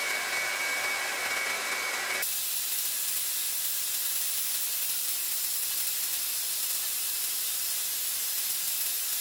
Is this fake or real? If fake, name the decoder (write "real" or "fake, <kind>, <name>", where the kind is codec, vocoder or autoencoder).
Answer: real